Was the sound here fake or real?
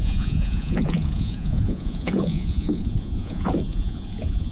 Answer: fake